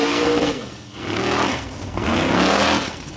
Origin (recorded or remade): remade